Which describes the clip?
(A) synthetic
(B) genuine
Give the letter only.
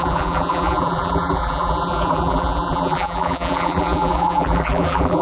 A